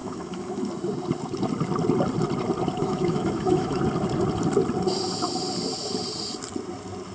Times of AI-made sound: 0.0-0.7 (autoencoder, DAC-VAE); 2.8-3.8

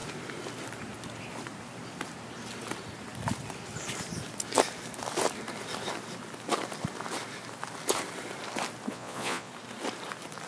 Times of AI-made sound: 8.9-9.5 (vocoder, Vocos)

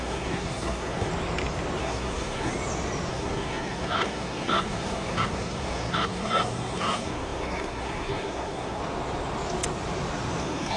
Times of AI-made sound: 0.0-1.1 (codec, SNAC); 1.8-2.5; 3.1-8.8; 10.4-10.8

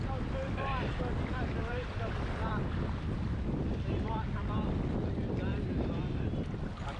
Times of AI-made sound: 1.6-2.5 (vocoder, BigVGAN v2); 5.5-6.3

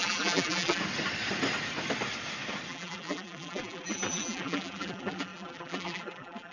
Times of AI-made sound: 0.0-0.8 (vocoder, BigVGAN v2); 2.7-6.5

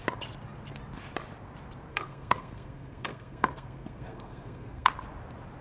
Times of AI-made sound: 1.9-4.9 (codec, SNAC)

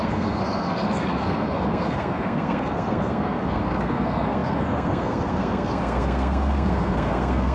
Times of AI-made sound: 0.0-7.5 (codec, SNAC)

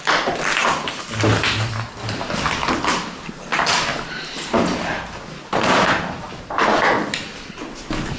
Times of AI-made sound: none